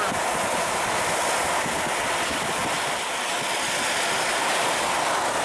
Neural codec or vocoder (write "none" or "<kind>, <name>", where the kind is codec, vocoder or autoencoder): none